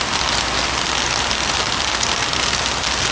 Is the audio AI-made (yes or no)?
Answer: no